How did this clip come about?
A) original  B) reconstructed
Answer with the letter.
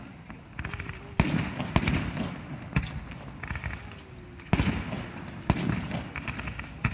A